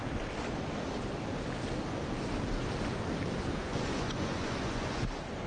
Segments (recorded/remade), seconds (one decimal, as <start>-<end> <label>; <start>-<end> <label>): 0.0-3.6 recorded; 3.6-5.0 remade; 5.0-5.5 recorded

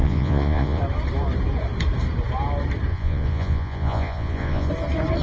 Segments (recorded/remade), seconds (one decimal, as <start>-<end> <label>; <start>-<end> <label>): 0.0-0.8 remade; 0.8-2.9 recorded; 2.9-4.7 remade; 4.7-5.2 recorded

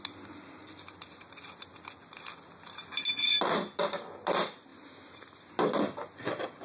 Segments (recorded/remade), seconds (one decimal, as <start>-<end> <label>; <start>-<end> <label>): 0.0-6.6 recorded

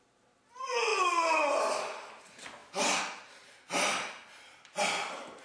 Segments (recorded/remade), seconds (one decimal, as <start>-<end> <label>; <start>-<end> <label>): 0.0-5.4 recorded